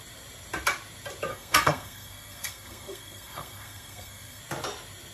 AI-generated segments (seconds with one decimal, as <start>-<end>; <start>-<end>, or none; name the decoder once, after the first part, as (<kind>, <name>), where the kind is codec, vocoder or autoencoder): 1.3-4.4 (codec, SNAC)